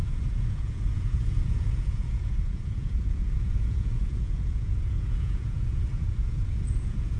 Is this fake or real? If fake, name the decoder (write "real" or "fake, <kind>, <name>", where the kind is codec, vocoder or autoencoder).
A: fake, vocoder, Vocos